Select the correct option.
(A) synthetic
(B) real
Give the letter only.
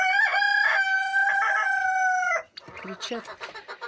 B